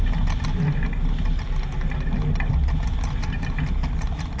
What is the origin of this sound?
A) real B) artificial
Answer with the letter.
A